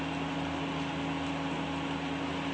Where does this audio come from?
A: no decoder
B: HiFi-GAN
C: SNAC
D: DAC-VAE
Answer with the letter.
A